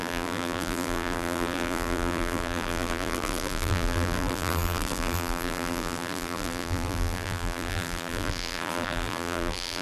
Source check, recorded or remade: remade